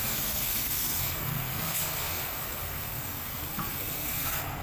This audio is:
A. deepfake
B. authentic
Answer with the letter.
A